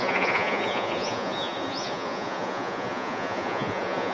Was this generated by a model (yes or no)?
yes